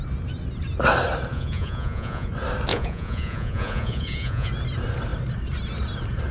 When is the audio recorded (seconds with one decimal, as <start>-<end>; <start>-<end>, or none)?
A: 0.0-1.3; 2.3-2.7; 4.5-6.3